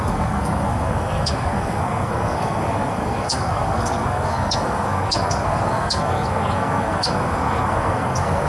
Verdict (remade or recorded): remade